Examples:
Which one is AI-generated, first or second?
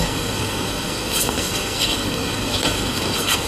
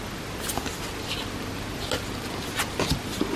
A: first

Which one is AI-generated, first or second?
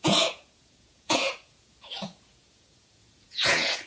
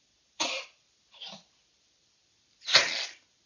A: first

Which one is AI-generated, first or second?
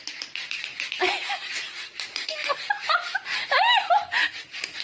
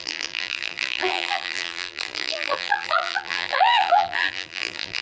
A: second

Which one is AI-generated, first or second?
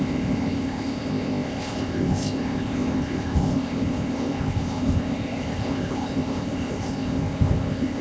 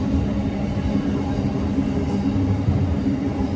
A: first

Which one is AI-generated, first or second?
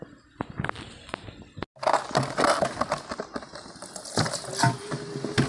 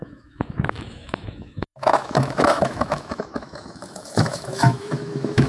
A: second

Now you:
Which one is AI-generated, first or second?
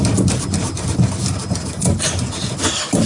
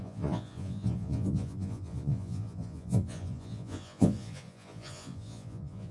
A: second